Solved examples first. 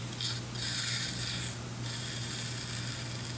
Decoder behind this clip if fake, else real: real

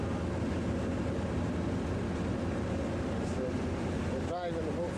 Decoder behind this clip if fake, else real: real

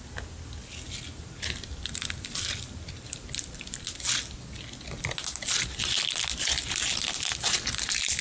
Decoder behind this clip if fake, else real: real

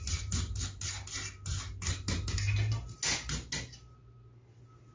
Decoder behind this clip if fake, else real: real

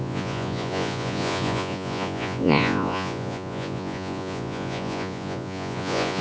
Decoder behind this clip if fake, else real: fake, vocoder, Vocos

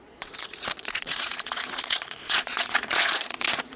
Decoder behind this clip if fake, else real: fake, vocoder, Vocos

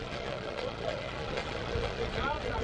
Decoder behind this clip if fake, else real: fake, vocoder, Vocos